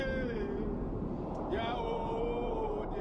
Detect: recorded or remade remade